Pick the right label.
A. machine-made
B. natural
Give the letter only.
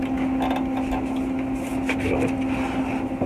B